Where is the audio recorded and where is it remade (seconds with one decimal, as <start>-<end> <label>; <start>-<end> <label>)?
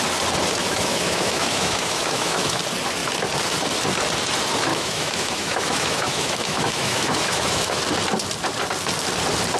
0.0-0.6 recorded; 0.6-2.6 remade; 2.6-4.7 recorded; 4.7-7.8 remade; 7.8-9.6 recorded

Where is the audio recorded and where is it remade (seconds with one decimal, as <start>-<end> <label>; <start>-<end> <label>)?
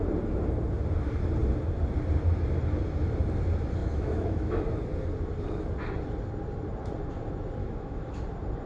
0.0-3.8 recorded; 3.8-4.8 remade; 4.8-7.6 recorded; 7.6-8.2 remade; 8.2-8.7 recorded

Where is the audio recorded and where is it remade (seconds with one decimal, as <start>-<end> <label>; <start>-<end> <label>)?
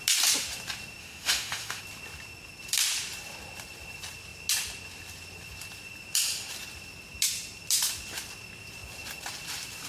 0.0-1.0 recorded; 1.0-1.8 remade; 1.8-9.9 recorded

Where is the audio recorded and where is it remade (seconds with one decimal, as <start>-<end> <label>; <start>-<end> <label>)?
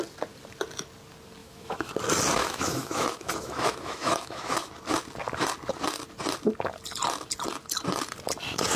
0.0-1.4 recorded; 1.4-1.9 remade; 1.9-2.4 recorded; 2.4-4.7 remade; 4.7-8.8 recorded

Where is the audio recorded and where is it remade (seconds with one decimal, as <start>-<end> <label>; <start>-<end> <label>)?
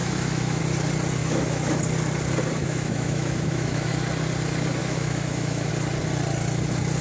0.0-0.6 remade; 0.6-1.2 recorded; 1.2-1.8 remade; 1.8-2.6 recorded; 2.6-3.9 remade; 3.9-4.8 recorded; 4.8-5.7 remade; 5.7-7.0 recorded